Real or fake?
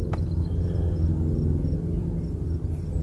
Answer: real